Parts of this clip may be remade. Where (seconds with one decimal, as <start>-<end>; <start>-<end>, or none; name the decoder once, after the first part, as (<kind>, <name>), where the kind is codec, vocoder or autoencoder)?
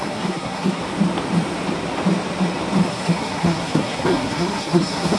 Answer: 0.0-0.8 (codec, SNAC); 2.9-5.2